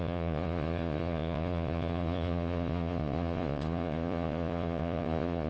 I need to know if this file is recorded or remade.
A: remade